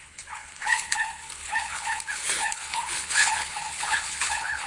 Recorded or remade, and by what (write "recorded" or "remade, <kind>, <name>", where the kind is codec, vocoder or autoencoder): remade, codec, HILCodec